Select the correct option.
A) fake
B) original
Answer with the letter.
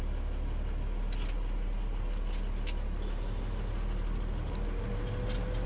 B